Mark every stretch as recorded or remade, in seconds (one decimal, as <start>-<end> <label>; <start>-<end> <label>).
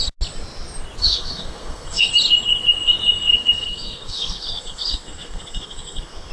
0.0-1.0 recorded; 1.0-2.1 remade; 2.1-3.3 recorded; 3.3-6.3 remade